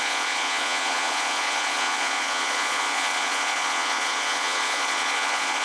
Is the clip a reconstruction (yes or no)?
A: yes